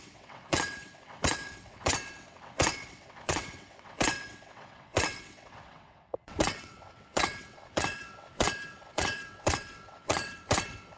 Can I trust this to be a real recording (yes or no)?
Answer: no